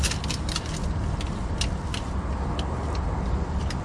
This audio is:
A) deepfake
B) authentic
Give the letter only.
B